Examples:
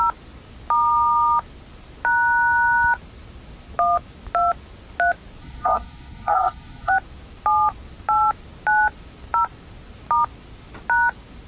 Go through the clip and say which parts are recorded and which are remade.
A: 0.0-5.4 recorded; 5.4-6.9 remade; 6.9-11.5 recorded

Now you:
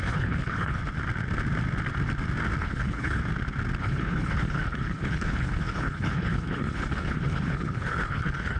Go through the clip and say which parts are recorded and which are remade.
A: 0.0-0.8 remade; 0.8-2.6 recorded; 2.6-3.2 remade; 3.2-3.8 recorded; 3.8-8.6 remade